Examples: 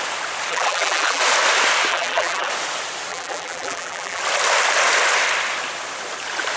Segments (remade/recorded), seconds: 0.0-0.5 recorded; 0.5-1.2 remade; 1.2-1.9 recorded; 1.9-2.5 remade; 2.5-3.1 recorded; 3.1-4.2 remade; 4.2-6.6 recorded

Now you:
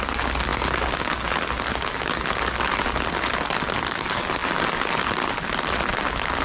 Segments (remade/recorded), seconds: 0.0-6.4 recorded